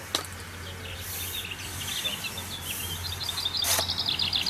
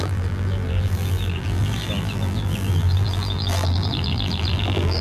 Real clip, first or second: first